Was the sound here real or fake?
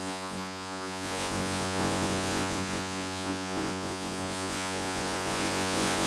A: fake